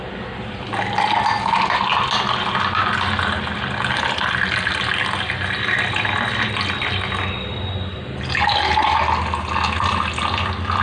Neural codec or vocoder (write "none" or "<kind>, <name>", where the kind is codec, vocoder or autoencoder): none